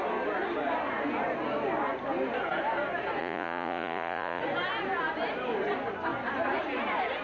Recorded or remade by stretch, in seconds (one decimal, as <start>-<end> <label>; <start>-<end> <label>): 0.0-3.2 recorded; 3.2-4.4 remade; 4.4-7.2 recorded